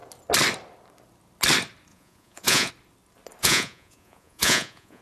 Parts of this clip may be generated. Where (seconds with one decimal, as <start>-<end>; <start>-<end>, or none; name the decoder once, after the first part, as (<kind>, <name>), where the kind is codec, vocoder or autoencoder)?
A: 1.9-2.7 (vocoder, Vocos); 3.4-5.0